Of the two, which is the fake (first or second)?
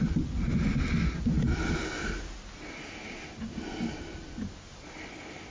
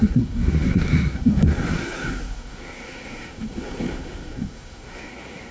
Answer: second